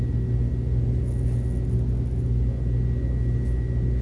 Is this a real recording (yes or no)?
yes